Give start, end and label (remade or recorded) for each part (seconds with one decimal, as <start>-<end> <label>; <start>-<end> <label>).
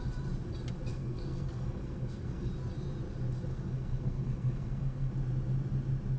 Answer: 0.0-0.9 recorded; 0.9-2.5 remade; 2.5-3.5 recorded; 3.5-5.1 remade; 5.1-6.2 recorded